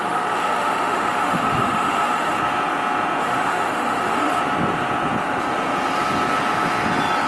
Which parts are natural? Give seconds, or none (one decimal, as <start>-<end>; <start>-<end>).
2.4-3.2; 4.4-7.3